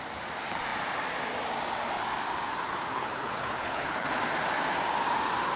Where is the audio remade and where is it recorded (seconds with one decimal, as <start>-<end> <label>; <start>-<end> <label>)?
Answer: 0.0-2.9 recorded; 2.9-4.1 remade; 4.1-5.6 recorded